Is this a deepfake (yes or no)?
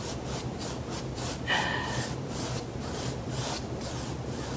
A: no